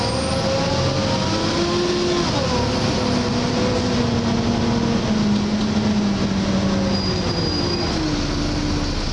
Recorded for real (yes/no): yes